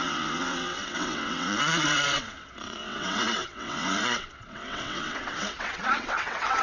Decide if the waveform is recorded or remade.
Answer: remade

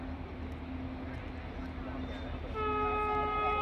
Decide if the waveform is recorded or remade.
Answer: recorded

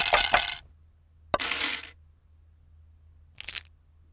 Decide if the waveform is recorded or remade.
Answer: recorded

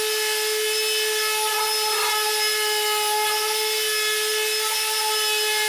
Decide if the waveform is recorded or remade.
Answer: recorded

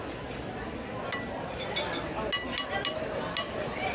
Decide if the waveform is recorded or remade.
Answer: recorded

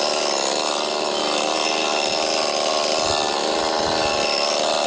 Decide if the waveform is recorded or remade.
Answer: recorded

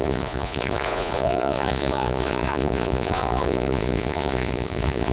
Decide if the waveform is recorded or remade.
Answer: remade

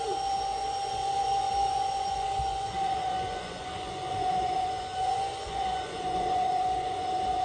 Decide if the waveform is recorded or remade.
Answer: remade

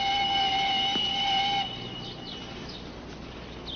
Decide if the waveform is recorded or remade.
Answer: recorded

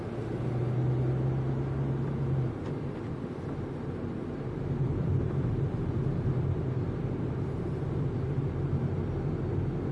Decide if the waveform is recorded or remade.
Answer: recorded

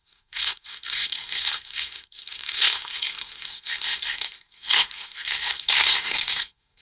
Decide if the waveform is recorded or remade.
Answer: remade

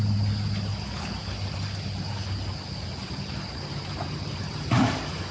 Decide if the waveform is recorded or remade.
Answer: recorded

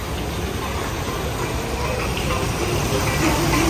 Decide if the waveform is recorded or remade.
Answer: recorded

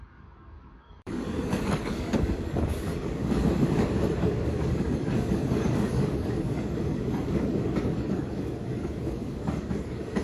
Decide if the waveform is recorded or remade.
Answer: remade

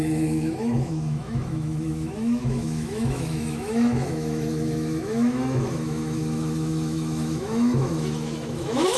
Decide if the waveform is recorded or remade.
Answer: remade